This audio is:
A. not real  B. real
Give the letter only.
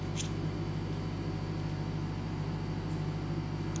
B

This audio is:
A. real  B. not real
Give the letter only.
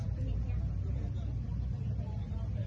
B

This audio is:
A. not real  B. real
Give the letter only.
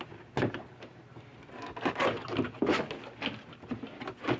B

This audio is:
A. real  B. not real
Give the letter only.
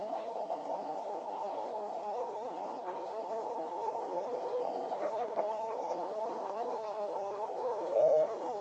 B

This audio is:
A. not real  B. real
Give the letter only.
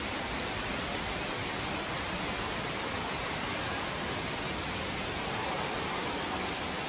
A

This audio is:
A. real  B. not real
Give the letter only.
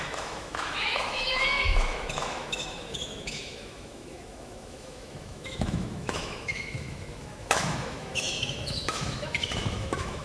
B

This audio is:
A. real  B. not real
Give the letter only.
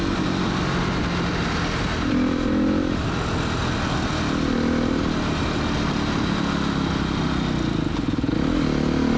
A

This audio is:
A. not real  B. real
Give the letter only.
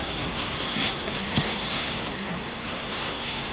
A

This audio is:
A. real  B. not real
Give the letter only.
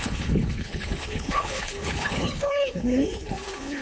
B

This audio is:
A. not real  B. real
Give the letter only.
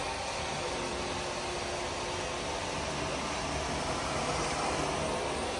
B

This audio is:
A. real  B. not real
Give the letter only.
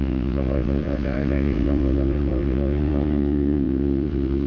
B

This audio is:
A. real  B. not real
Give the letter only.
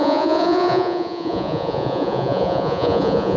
B